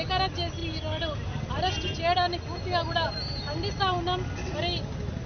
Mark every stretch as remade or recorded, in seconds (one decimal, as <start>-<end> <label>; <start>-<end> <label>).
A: 0.0-5.3 recorded

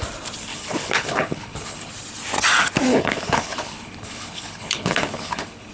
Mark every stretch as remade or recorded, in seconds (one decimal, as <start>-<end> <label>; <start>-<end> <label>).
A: 0.0-0.5 recorded; 0.5-1.9 remade; 1.9-2.9 recorded; 2.9-5.7 remade

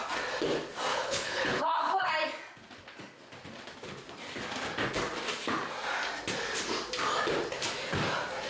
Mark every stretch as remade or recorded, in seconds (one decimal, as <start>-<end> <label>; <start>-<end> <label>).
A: 0.0-0.9 recorded; 0.9-2.1 remade; 2.1-8.5 recorded

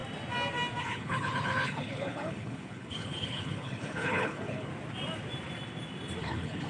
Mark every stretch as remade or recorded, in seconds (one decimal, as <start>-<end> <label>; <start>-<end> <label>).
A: 0.0-0.8 recorded; 0.8-4.7 remade; 4.7-6.2 recorded; 6.2-6.7 remade

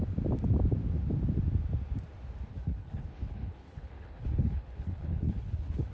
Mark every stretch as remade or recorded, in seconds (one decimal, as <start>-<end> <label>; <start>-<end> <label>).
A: 0.0-2.5 recorded; 2.5-5.9 remade

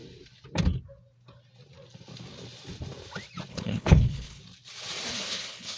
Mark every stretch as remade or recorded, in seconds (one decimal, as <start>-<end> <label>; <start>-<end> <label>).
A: 0.0-3.5 recorded; 3.5-4.4 remade; 4.4-5.1 recorded; 5.1-5.8 remade

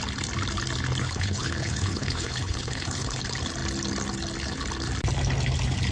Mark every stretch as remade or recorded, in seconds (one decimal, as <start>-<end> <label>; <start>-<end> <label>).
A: 0.0-1.0 recorded; 1.0-3.2 remade; 3.2-5.9 recorded

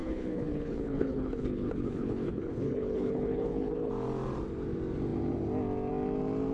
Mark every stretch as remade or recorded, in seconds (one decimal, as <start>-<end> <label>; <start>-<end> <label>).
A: 0.0-3.9 remade; 3.9-6.5 recorded